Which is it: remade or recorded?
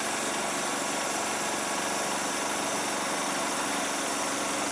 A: recorded